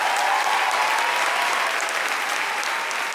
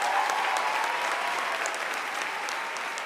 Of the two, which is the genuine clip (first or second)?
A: first